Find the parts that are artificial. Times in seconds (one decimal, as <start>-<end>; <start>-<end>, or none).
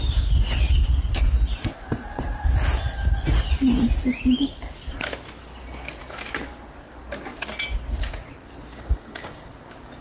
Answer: 8.7-9.5